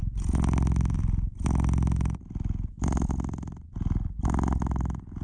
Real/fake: real